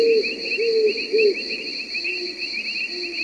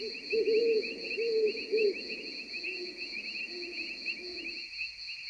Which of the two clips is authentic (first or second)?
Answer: first